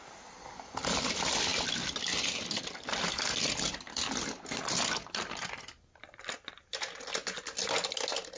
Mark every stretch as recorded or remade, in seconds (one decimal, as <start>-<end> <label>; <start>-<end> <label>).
0.0-8.4 recorded